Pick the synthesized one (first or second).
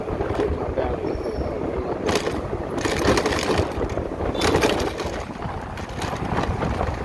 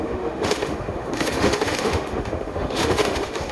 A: second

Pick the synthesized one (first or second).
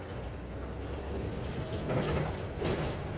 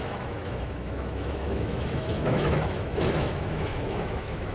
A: second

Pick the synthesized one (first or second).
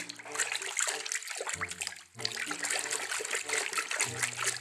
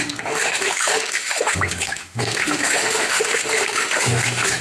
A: second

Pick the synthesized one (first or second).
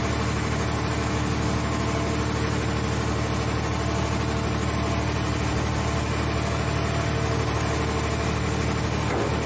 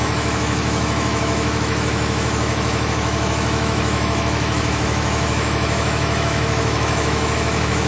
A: second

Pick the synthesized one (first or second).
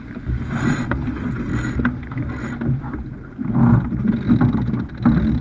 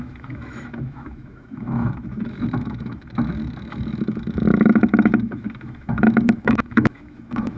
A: second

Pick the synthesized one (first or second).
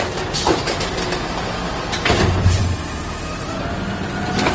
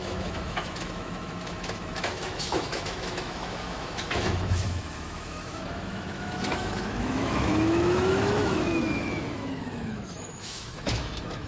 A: second